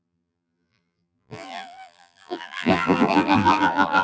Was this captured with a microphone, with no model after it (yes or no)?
no